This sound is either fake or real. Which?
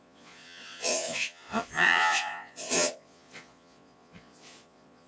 fake